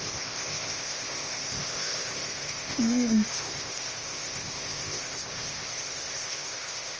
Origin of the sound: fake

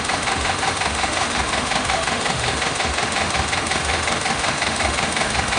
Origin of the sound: fake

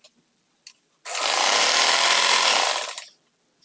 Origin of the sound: real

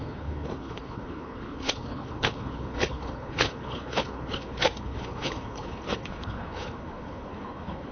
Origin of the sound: fake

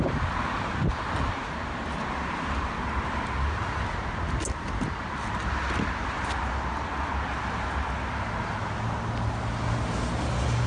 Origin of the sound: real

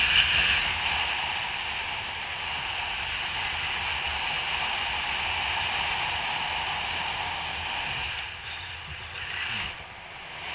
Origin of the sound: real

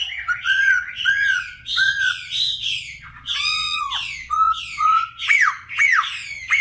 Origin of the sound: fake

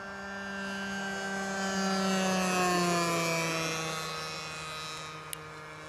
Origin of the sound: real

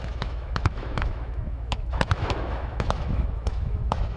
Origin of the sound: fake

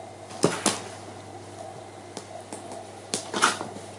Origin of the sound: real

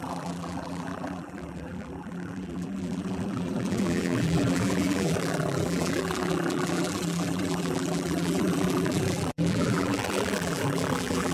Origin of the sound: fake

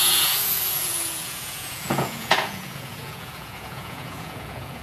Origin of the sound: fake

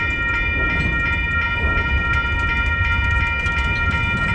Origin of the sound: real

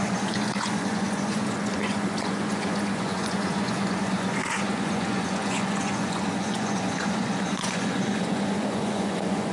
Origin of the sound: fake